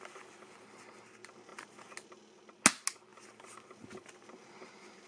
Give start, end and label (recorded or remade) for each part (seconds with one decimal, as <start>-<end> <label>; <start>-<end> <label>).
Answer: 0.0-5.1 recorded